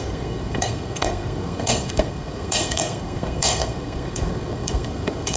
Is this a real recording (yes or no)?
no